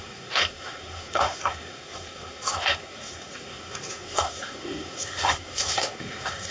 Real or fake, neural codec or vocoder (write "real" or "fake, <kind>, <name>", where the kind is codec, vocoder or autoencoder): fake, codec, SNAC